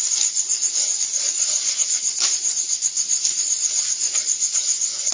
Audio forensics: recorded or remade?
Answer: recorded